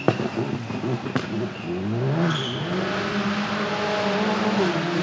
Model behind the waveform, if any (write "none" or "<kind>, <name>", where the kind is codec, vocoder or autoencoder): none